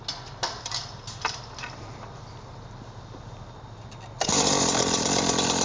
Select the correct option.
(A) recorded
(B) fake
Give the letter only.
A